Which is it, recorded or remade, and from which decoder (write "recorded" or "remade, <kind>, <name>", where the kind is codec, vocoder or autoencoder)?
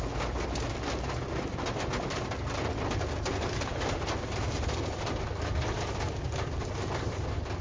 remade, vocoder, BigVGAN v2